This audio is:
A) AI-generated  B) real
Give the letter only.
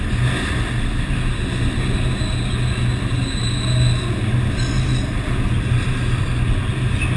B